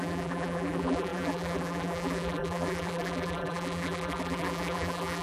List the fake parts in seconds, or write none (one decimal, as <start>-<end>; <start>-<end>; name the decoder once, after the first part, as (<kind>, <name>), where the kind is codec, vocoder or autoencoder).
0.0-5.2 (vocoder, BigVGAN v2)